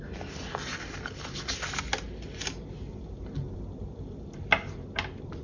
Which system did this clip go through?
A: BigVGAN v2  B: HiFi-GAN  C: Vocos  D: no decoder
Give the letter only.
D